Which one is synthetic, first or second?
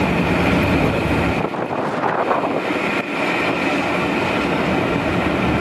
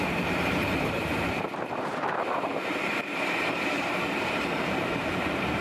second